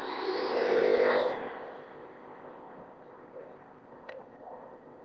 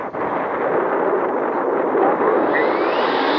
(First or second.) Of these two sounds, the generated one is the first